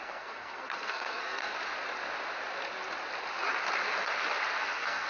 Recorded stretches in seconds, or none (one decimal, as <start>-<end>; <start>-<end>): 1.5-4.6